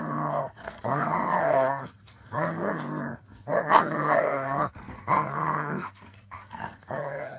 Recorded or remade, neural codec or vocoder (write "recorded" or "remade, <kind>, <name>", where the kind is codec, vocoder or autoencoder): remade, codec, SNAC